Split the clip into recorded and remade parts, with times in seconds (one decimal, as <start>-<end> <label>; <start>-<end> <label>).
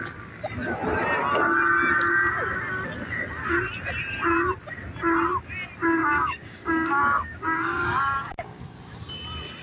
0.0-6.0 recorded; 6.0-8.6 remade; 8.6-9.6 recorded